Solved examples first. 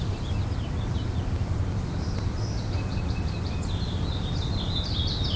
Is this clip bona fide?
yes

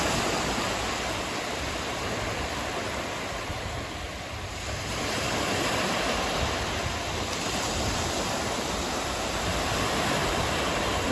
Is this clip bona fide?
yes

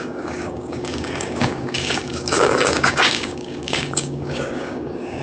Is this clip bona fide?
no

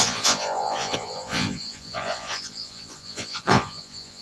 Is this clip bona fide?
no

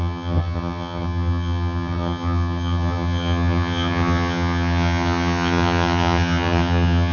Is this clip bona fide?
no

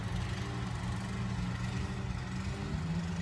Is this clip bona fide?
yes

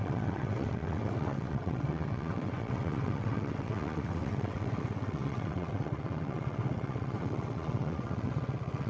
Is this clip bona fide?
no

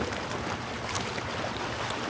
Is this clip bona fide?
yes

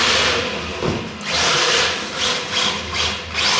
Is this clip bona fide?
yes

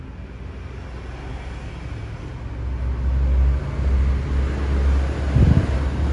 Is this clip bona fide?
yes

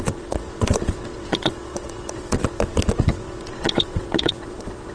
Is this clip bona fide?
no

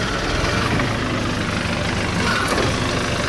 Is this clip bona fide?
yes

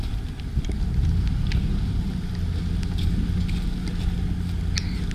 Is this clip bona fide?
yes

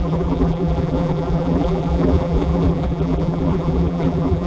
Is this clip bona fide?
no